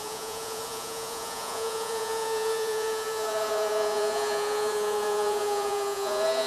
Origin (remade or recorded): remade